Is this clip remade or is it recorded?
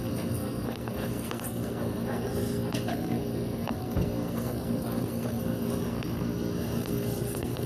remade